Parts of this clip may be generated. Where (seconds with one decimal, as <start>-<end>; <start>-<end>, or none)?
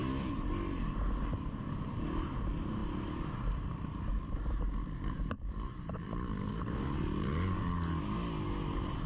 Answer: 2.8-6.5